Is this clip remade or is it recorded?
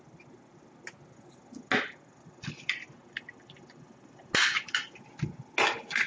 recorded